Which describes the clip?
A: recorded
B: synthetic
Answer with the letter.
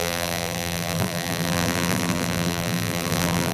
B